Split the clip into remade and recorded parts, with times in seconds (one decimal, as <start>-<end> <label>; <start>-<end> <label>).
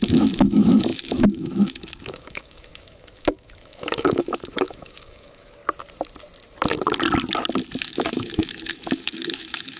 0.0-5.6 remade; 5.6-7.8 recorded; 7.8-9.8 remade